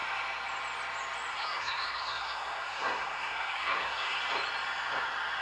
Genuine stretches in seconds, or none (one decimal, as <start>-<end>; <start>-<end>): 0.0-1.3; 4.2-5.4